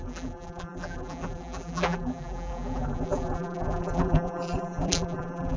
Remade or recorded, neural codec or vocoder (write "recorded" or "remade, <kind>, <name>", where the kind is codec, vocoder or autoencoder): remade, vocoder, BigVGAN v2